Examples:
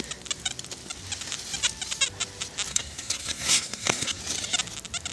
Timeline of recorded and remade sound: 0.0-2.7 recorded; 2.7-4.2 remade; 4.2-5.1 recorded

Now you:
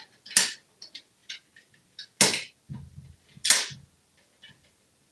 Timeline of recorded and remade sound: 0.0-5.1 recorded

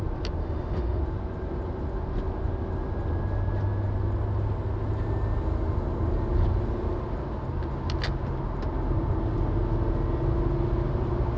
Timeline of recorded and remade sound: 0.0-0.4 recorded; 0.4-1.0 remade; 1.0-11.4 recorded